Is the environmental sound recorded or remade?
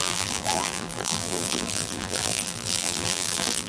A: remade